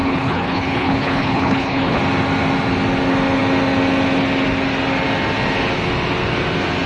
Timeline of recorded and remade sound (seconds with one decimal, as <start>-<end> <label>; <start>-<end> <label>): 0.0-2.0 remade; 2.0-6.9 recorded